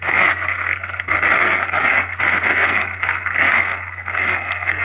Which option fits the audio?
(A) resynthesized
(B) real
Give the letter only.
A